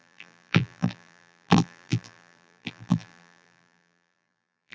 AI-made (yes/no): yes